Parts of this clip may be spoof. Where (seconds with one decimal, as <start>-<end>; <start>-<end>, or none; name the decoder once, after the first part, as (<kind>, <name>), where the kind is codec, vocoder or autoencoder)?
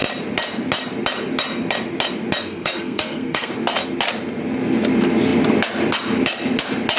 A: 2.4-3.5 (codec, SNAC)